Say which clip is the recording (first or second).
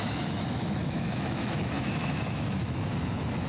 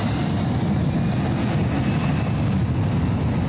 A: second